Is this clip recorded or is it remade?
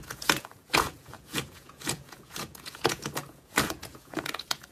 remade